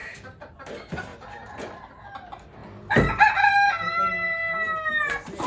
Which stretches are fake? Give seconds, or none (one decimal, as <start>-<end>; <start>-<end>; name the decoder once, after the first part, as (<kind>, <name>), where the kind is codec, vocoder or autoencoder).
none